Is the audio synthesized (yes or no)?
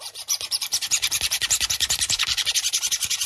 yes